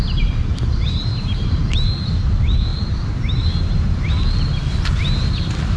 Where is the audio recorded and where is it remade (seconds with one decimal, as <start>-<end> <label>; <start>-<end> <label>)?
0.0-1.1 recorded; 1.1-1.7 remade; 1.7-5.8 recorded